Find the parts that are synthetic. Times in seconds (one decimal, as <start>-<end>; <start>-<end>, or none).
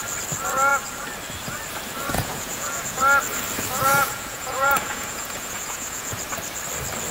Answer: 2.1-3.0; 3.9-6.2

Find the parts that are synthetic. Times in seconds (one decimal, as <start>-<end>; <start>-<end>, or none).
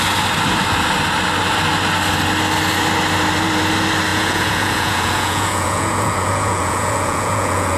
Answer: 4.1-7.8